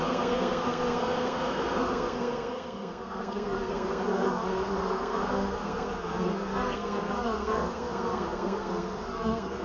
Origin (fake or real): fake